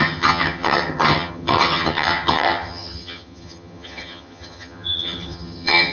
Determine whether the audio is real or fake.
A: fake